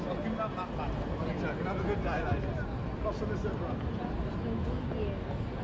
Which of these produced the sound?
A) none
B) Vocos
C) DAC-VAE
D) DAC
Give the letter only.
A